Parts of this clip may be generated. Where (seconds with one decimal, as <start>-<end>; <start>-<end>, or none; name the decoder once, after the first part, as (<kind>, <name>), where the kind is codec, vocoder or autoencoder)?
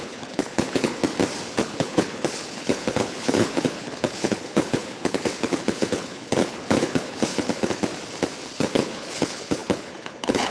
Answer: 0.0-1.0 (codec, HILCodec); 1.6-7.9; 8.5-10.5